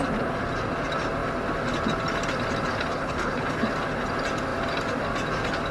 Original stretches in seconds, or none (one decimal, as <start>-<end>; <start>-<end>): 0.0-2.9; 3.7-5.7